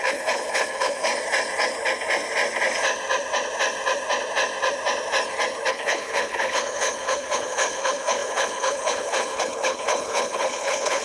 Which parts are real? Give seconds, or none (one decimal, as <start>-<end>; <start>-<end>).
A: 1.1-5.7